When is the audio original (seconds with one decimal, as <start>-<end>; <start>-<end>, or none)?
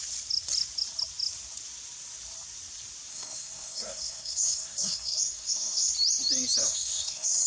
0.0-3.1; 5.9-6.6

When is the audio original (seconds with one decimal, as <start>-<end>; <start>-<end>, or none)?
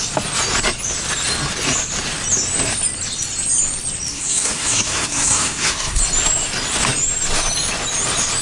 0.0-4.1; 6.0-8.4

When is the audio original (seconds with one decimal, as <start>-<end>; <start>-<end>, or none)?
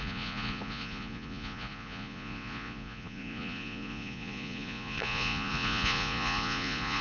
none